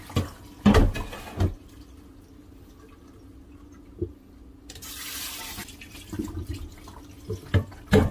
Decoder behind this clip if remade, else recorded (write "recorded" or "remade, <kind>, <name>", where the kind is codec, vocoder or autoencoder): recorded